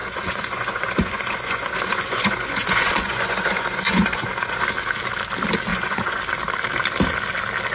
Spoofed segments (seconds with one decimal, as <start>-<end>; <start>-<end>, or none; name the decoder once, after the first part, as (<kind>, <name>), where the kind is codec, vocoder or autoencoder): 0.0-4.6 (vocoder, Vocos); 5.7-6.2